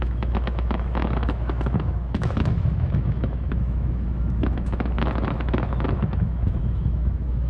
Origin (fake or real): fake